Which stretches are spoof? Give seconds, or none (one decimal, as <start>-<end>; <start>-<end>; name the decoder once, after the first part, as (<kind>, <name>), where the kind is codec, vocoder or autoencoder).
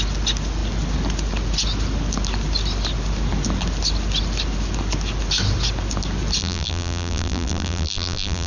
6.4-8.5 (vocoder, BigVGAN v2)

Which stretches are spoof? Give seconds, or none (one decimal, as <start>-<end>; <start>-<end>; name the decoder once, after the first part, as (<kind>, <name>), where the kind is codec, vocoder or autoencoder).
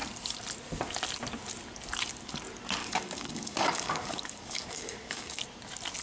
2.8-5.4 (codec, DAC)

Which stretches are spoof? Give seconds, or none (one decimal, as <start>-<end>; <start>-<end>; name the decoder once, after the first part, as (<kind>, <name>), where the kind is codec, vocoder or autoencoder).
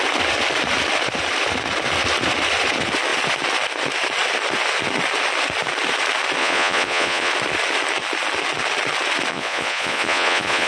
6.4-7.3 (vocoder, Vocos); 9.3-10.7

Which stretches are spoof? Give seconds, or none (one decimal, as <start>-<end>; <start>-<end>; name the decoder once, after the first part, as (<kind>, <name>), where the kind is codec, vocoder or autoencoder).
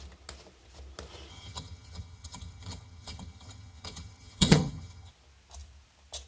1.3-5.1 (vocoder, HiFi-GAN)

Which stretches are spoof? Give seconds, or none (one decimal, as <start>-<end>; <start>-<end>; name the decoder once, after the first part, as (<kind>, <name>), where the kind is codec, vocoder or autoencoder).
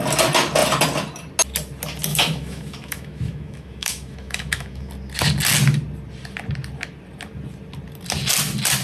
2.1-4.9 (autoencoder, DAC-VAE)